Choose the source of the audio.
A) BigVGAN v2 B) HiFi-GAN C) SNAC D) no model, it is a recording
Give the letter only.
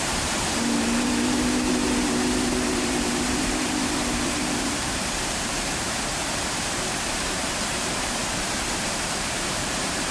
A